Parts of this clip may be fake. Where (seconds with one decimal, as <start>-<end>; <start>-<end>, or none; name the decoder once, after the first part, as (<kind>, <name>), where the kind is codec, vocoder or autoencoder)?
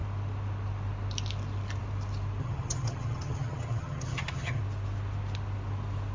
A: 2.4-4.6 (vocoder, HiFi-GAN)